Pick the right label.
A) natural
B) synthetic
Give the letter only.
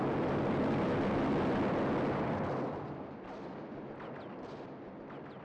A